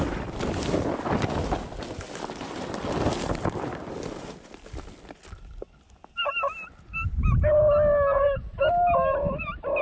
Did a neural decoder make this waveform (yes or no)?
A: no